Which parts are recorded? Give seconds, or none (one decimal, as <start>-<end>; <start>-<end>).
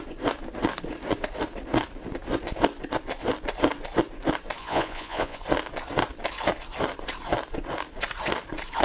0.0-4.6; 5.4-8.8